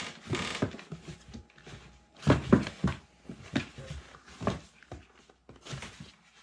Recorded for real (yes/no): yes